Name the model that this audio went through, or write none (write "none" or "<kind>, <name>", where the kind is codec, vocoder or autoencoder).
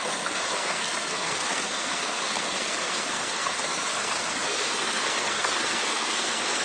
codec, SNAC